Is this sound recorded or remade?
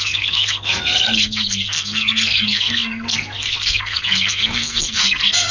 remade